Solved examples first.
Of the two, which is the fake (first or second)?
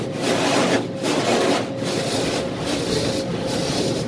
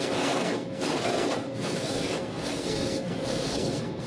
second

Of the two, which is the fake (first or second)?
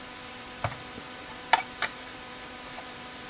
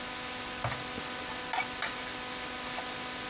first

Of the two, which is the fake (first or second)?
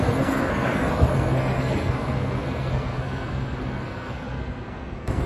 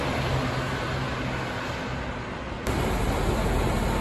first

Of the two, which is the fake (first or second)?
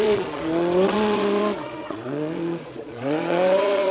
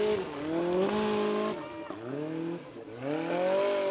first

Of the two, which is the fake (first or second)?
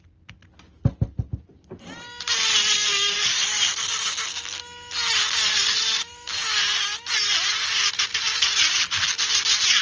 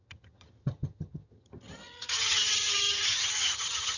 second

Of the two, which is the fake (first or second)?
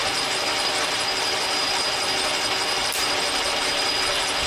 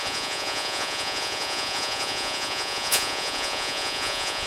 second